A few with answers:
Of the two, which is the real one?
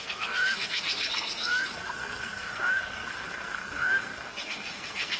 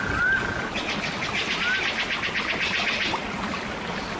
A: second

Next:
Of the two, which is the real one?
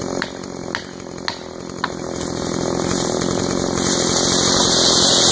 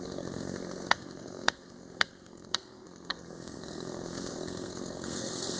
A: first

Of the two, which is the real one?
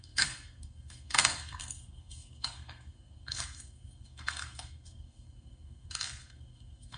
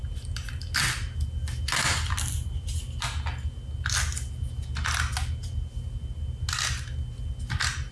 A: second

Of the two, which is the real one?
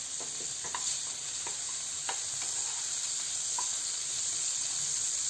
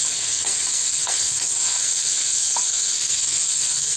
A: first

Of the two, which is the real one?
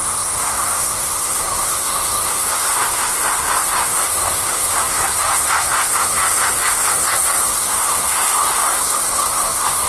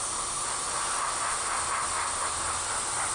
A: second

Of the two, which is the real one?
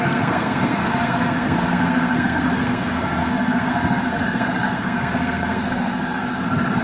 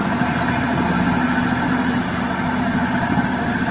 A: second